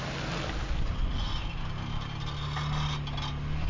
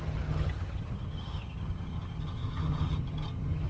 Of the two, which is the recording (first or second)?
first